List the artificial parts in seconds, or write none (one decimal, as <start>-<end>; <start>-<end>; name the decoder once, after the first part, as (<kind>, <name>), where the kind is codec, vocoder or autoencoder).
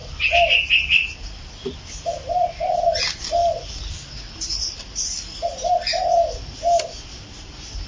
0.0-0.7 (vocoder, BigVGAN v2); 3.4-5.7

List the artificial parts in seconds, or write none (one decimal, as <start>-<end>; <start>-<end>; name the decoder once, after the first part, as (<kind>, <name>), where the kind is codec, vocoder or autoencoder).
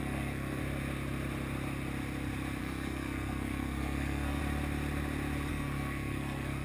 0.0-0.6 (codec, SNAC); 2.6-4.4; 5.5-6.6